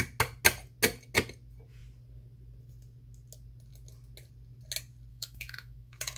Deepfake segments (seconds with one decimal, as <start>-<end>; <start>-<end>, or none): 5.1-6.2